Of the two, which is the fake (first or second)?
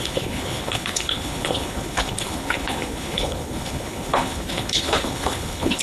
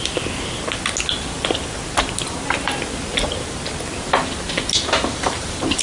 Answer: first